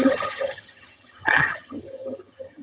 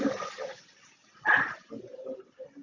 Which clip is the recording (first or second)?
second